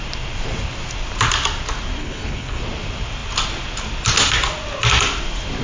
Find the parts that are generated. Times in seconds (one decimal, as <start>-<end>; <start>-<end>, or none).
2.0-2.6